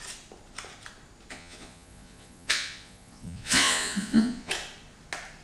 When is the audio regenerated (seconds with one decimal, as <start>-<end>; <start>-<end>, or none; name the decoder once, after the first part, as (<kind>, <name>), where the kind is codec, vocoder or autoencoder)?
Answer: 1.3-4.5 (vocoder, Vocos)